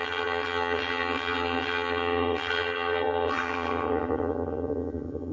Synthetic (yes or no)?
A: yes